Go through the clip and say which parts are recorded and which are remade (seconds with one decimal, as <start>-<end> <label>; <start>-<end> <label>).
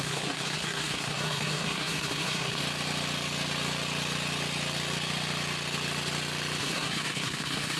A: 0.0-2.6 remade; 2.6-6.6 recorded; 6.6-7.8 remade